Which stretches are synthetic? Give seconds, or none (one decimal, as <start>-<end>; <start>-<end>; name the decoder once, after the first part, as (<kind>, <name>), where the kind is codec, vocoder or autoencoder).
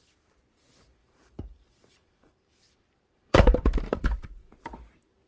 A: 1.0-4.2 (vocoder, BigVGAN v2)